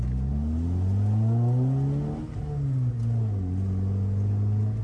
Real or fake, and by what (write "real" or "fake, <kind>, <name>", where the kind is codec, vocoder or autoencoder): real